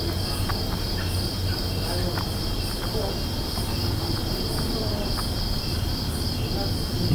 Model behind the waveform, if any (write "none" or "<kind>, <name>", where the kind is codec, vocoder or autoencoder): none